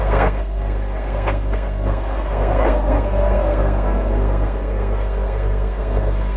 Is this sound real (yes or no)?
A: no